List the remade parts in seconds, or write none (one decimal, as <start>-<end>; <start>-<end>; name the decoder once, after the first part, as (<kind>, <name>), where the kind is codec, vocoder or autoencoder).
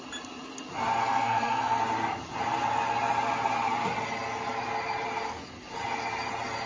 1.0-1.8 (codec, SNAC)